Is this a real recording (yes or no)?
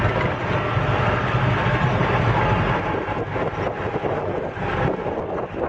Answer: yes